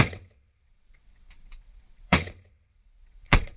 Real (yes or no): no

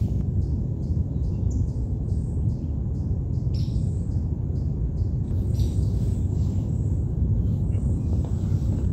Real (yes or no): yes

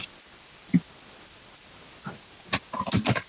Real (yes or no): yes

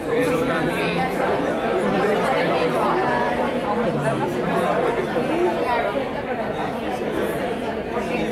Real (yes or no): no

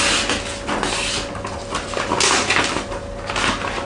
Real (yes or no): yes